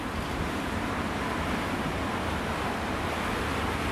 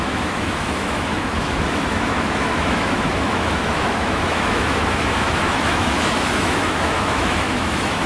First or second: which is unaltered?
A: first